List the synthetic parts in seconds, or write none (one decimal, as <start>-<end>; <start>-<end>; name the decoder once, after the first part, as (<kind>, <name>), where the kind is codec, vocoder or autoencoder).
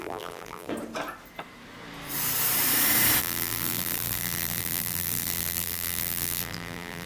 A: 0.0-0.7 (vocoder, BigVGAN v2); 3.2-7.1